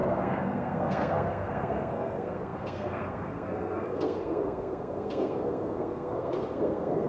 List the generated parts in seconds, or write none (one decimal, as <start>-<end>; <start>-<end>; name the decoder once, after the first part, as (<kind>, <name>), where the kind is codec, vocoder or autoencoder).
0.0-7.1 (codec, SNAC)